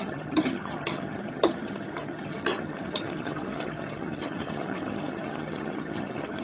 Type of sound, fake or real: fake